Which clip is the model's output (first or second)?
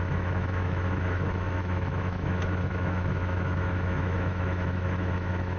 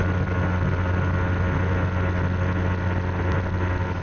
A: first